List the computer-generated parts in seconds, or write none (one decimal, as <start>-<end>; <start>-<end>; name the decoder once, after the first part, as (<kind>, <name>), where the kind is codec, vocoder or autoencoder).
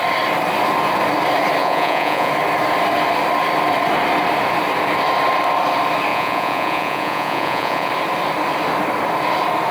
1.6-2.3 (vocoder, Vocos); 6.1-7.9